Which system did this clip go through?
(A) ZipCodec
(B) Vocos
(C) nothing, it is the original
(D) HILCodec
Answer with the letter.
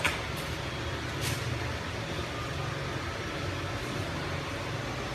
C